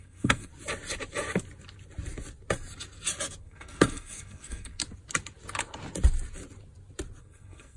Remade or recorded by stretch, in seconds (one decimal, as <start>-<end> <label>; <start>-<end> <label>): 0.0-0.5 remade; 0.5-3.4 recorded; 3.4-4.8 remade; 4.8-7.2 recorded; 7.2-7.8 remade